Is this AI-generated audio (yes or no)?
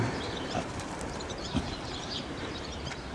yes